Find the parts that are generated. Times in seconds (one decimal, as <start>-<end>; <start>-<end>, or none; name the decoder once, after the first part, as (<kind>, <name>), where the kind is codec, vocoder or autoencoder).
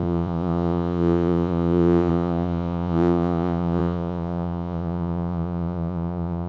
0.0-6.5 (vocoder, Vocos)